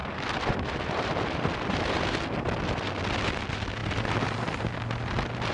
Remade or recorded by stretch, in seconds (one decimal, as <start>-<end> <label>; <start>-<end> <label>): 0.0-3.0 remade; 3.0-3.8 recorded; 3.8-4.6 remade; 4.6-5.5 recorded